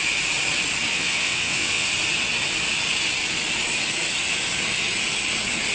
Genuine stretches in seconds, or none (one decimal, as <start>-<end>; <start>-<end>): 0.0-0.9; 1.9-5.7